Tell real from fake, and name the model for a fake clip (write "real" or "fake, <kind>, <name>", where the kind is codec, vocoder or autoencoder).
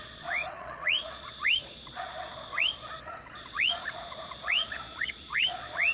fake, vocoder, Vocos